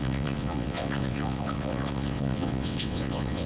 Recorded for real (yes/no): no